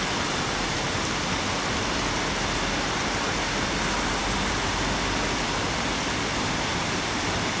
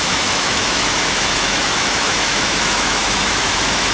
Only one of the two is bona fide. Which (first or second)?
first